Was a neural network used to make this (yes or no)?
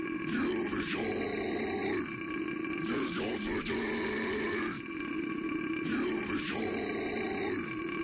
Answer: no